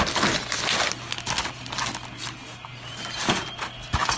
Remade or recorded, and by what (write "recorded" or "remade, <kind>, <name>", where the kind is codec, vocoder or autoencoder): recorded